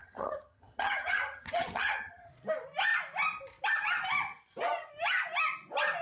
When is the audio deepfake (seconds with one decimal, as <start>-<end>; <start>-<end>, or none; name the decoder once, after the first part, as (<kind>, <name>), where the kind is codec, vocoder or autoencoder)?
0.0-2.3 (vocoder, HiFi-GAN)